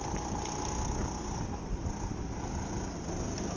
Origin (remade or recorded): recorded